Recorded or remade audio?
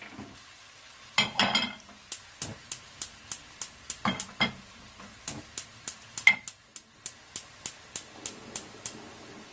recorded